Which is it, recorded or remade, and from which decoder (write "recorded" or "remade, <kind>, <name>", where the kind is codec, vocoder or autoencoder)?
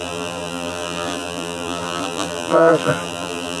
remade, vocoder, BigVGAN v2